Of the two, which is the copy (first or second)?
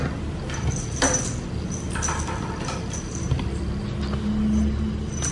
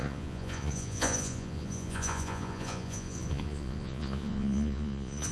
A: second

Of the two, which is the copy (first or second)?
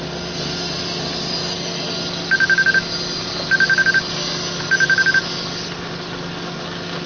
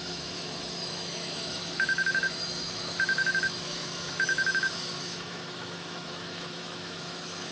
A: second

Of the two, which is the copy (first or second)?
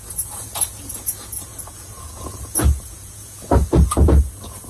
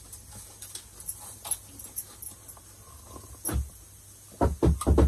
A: first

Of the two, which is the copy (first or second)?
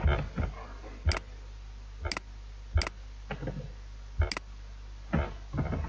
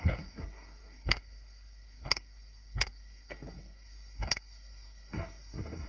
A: second